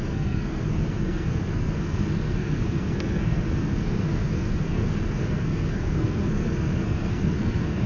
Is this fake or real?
fake